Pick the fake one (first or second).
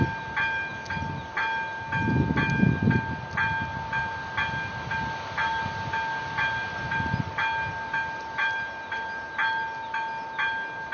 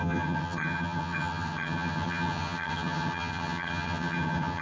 second